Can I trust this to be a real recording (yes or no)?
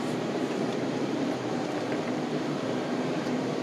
no